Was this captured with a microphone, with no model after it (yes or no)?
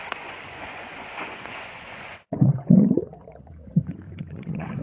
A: no